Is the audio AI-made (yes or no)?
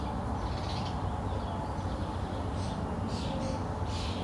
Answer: no